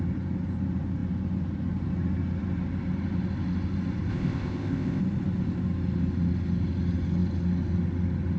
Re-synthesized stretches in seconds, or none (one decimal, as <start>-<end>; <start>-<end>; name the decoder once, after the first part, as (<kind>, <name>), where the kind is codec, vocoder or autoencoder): 4.1-5.0 (codec, ZipCodec)